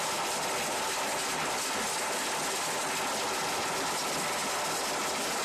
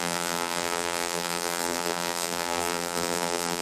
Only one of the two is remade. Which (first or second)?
second